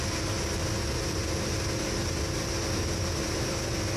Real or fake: real